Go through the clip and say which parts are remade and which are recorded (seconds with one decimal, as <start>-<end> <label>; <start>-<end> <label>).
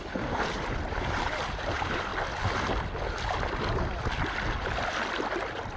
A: 0.0-2.1 remade; 2.1-5.8 recorded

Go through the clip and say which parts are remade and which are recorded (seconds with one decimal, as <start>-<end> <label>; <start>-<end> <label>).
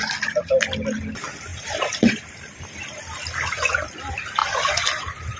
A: 0.0-1.5 recorded; 1.5-2.6 remade; 2.6-4.4 recorded; 4.4-5.4 remade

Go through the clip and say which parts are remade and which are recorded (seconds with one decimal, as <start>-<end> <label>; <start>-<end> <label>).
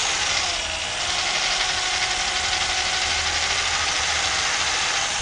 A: 0.0-3.1 recorded; 3.1-5.2 remade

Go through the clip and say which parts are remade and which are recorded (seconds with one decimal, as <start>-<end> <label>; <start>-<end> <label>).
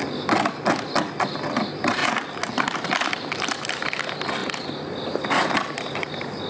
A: 0.0-2.0 recorded; 2.0-3.1 remade; 3.1-6.5 recorded